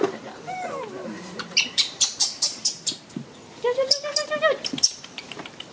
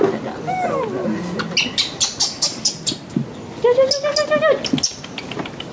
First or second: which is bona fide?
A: second